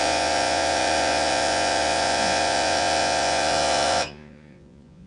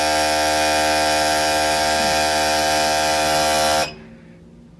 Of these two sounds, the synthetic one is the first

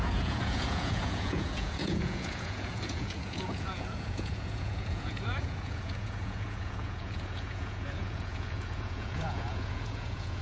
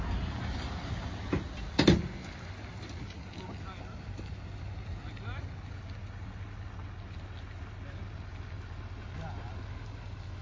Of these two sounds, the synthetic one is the first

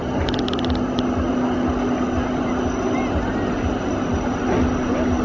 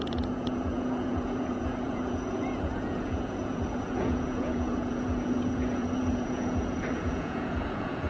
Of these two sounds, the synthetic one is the second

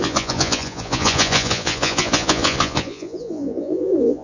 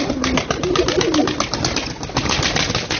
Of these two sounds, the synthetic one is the first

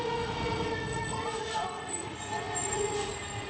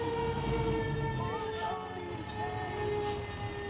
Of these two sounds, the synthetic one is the first